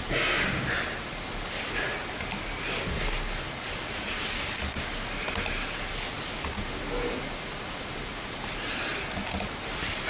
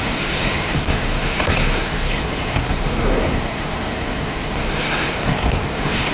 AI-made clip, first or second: second